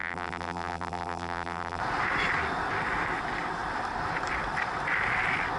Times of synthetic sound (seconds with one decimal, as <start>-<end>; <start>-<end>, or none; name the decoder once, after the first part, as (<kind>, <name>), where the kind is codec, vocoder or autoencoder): 0.0-1.8 (vocoder, BigVGAN v2)